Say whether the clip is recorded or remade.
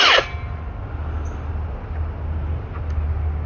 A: recorded